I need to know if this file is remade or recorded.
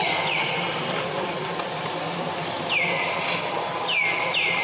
recorded